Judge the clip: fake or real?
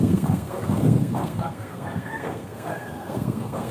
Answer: fake